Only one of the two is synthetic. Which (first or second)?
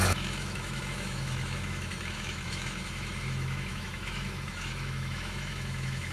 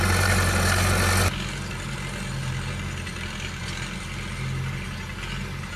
first